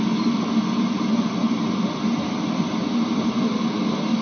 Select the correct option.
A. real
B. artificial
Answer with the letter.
B